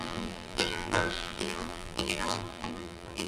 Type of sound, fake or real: fake